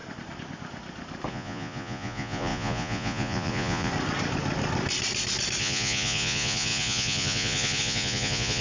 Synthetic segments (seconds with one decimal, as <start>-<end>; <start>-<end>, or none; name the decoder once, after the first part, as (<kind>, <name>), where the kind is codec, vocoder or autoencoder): 1.3-3.9 (vocoder, Vocos); 5.6-8.6